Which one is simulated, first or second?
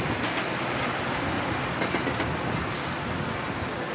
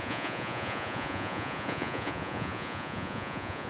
second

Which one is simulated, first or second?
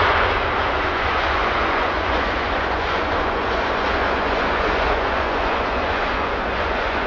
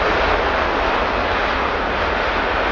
first